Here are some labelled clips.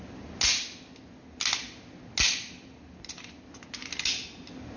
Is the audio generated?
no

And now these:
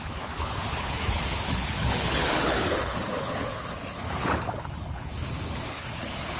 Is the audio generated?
yes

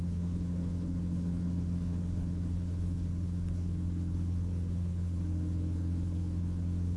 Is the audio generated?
yes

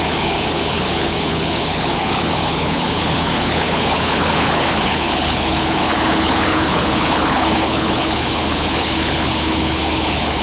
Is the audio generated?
yes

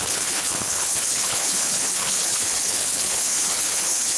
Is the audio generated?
yes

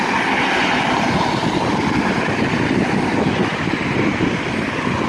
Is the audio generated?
no